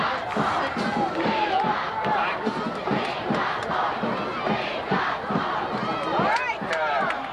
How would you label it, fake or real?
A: real